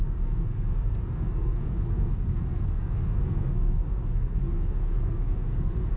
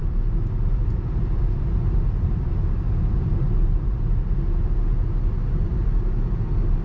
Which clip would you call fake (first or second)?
first